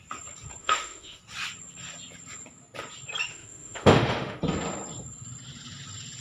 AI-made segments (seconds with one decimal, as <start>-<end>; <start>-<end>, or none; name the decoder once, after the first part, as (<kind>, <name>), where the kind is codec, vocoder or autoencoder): 0.6-1.2 (autoencoder, DAC-VAE); 3.3-4.4